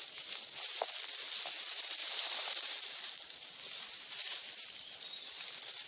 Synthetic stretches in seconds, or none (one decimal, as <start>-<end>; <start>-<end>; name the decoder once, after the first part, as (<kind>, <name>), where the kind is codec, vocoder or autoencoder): 2.0-5.5 (vocoder, BigVGAN v2)